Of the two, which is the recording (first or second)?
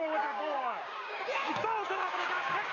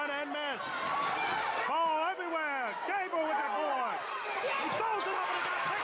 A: second